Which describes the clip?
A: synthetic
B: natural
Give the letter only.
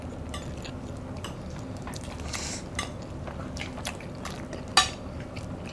B